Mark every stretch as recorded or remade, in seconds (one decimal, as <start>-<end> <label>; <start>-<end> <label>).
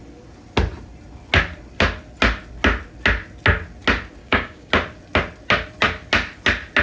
0.0-4.2 recorded; 4.2-4.7 remade; 4.7-6.8 recorded